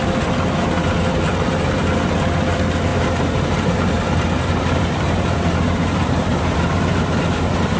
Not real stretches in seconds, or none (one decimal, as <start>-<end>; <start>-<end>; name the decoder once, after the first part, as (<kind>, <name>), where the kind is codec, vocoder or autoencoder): 2.9-7.8 (vocoder, BigVGAN v2)